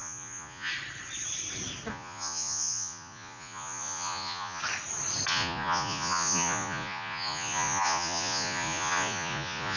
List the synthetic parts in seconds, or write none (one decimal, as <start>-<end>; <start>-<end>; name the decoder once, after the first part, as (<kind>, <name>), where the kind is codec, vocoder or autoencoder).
0.0-0.7 (vocoder, Vocos); 1.9-4.6; 5.3-9.8